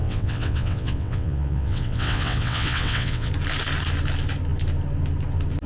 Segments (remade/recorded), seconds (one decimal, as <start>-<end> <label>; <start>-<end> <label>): 0.0-3.3 remade; 3.3-5.7 recorded